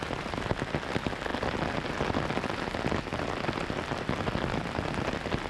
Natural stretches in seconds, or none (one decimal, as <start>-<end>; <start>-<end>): 0.0-5.5